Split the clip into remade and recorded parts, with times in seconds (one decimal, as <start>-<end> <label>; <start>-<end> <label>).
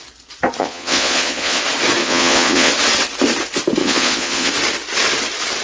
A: 0.0-0.6 recorded; 0.6-1.6 remade; 1.6-2.0 recorded; 2.0-2.7 remade; 2.7-3.8 recorded; 3.8-4.5 remade; 4.5-5.6 recorded